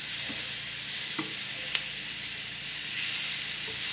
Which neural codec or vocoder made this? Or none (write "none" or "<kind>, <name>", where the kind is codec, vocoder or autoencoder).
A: none